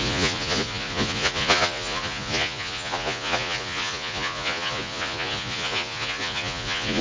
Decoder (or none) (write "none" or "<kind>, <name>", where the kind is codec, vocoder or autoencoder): vocoder, Vocos